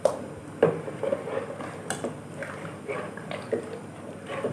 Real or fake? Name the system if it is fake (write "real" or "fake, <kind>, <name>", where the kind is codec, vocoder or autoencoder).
fake, vocoder, BigVGAN v2